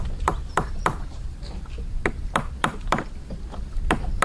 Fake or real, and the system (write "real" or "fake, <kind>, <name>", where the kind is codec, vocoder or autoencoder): real